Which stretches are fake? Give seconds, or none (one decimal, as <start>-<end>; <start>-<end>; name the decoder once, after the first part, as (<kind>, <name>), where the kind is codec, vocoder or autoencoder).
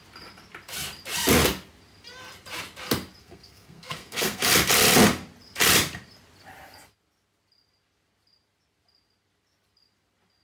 3.2-4.5 (codec, SNAC)